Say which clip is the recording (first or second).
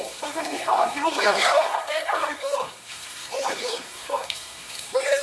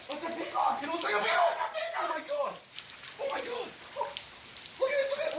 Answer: second